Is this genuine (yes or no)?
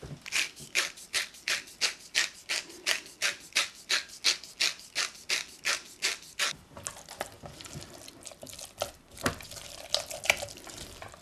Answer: yes